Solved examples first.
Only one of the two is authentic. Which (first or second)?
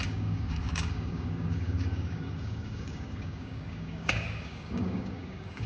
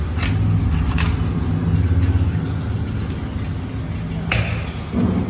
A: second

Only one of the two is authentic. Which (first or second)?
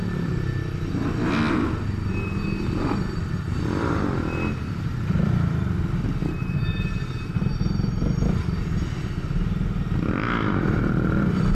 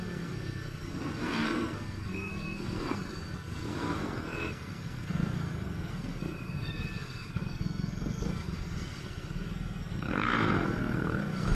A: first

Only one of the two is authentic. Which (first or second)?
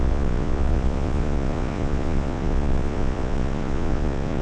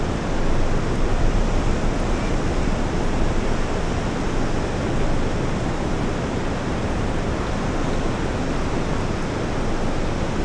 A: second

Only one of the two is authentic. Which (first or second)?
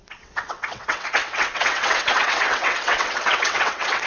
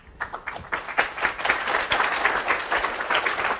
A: second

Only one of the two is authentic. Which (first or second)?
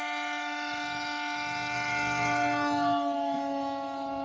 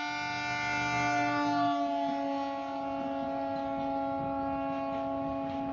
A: second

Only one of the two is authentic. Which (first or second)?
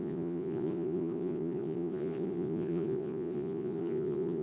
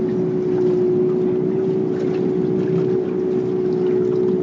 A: second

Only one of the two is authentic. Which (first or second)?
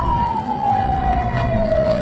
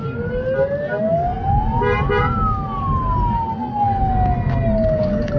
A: second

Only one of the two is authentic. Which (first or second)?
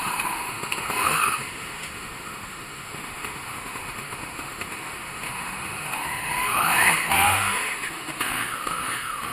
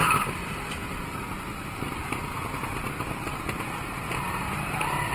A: second